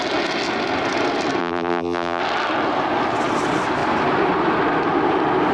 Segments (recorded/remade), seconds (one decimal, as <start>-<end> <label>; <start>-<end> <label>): 0.0-1.4 recorded; 1.4-2.2 remade; 2.2-5.5 recorded

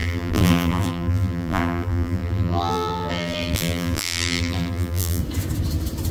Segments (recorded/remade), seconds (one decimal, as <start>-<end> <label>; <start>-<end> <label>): 0.0-5.2 remade; 5.2-6.1 recorded